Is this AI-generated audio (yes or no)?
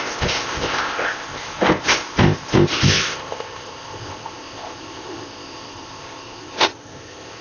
yes